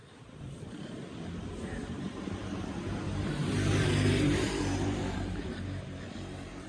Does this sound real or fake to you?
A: fake